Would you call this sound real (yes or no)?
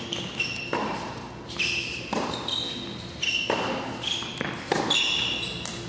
yes